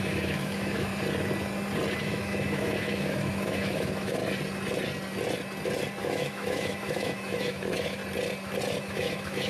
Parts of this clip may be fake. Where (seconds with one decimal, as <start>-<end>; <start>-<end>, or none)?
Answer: 0.0-0.9; 2.0-4.2; 6.0-8.0; 8.8-9.5